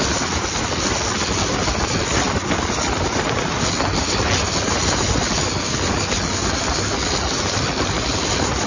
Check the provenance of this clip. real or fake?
real